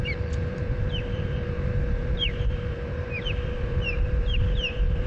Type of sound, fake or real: fake